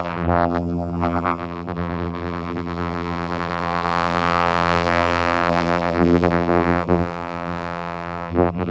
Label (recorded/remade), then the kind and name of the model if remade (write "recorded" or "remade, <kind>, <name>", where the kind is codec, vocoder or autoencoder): remade, vocoder, BigVGAN v2